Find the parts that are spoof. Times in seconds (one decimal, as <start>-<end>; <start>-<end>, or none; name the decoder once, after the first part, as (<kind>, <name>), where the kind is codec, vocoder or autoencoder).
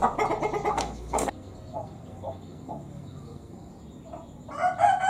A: 0.7-3.7 (codec, SNAC)